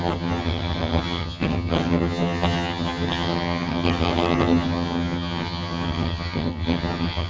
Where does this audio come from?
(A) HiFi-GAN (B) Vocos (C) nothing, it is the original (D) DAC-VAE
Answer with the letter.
A